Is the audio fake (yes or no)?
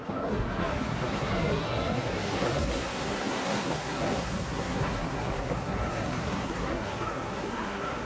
yes